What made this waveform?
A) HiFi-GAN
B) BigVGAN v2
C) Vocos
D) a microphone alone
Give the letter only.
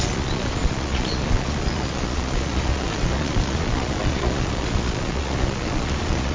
C